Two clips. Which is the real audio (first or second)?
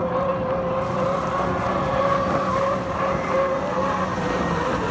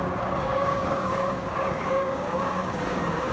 first